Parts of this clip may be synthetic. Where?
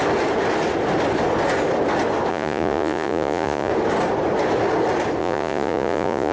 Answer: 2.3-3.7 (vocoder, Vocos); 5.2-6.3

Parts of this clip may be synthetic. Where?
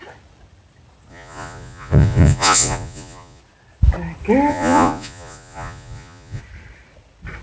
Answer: 1.1-3.4 (vocoder, Vocos); 4.5-6.4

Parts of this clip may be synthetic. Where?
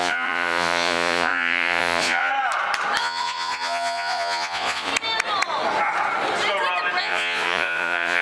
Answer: 0.0-2.3 (vocoder, Vocos); 3.0-4.9; 7.0-8.2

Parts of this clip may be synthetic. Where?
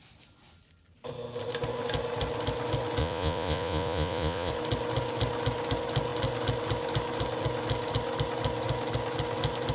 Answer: 3.0-4.5 (vocoder, Vocos)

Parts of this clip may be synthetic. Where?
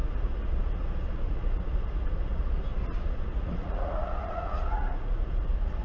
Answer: 0.0-5.8 (vocoder, Vocos)